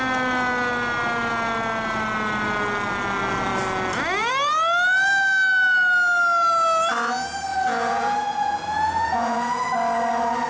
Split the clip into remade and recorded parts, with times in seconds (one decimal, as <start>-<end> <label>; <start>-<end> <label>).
0.0-7.5 recorded; 7.5-9.7 remade; 9.7-10.5 recorded

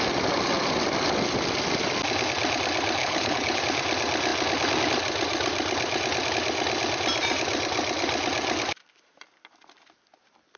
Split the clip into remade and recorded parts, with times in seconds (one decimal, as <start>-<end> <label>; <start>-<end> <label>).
0.0-3.0 recorded; 3.0-3.6 remade; 3.6-10.6 recorded

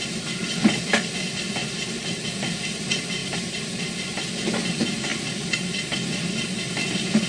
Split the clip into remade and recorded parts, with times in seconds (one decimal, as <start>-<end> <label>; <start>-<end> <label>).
0.0-1.6 recorded; 1.6-2.2 remade; 2.2-3.2 recorded; 3.2-3.8 remade; 3.8-7.3 recorded

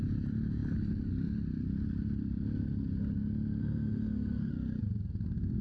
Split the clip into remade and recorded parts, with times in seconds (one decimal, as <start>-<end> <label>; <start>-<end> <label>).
0.0-3.6 recorded; 3.6-4.5 remade; 4.5-5.6 recorded